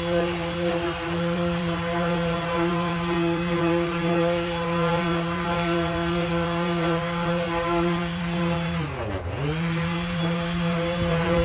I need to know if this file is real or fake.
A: fake